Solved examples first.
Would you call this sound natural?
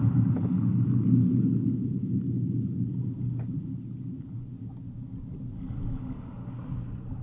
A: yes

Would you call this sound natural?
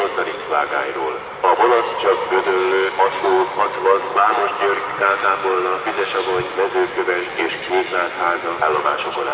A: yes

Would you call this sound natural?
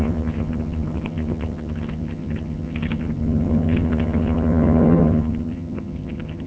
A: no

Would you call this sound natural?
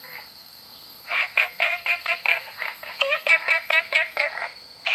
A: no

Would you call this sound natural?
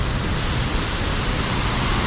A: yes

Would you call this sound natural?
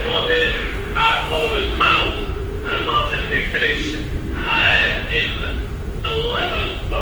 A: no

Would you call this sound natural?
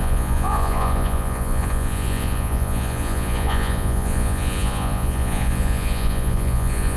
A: no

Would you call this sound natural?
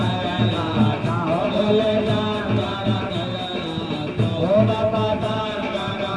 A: yes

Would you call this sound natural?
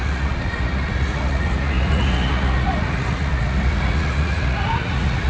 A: no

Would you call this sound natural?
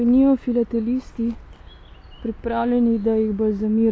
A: yes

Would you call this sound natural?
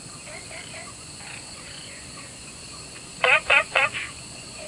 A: no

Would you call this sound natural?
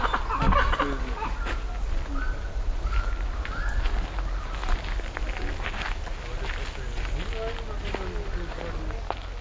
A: yes